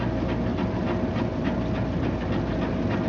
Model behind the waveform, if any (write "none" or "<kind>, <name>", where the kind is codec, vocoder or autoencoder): none